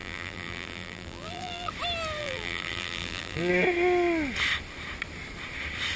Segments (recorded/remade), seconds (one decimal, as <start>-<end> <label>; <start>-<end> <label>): 0.0-1.7 remade; 1.7-2.2 recorded; 2.2-3.5 remade; 3.5-6.0 recorded